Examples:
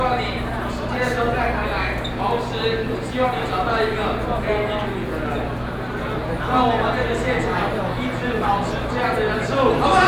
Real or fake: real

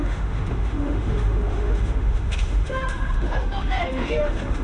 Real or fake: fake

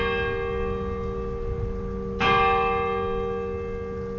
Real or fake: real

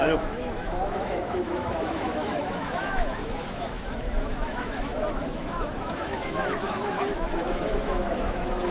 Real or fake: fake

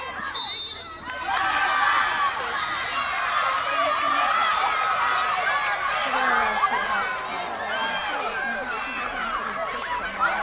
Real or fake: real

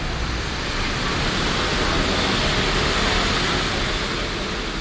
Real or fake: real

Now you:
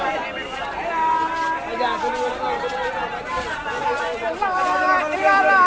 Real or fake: real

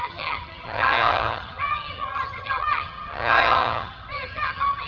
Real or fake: fake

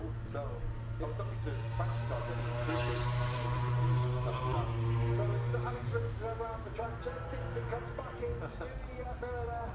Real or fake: real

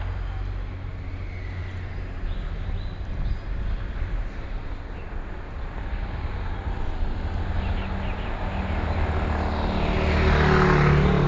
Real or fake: real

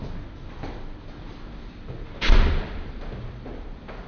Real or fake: fake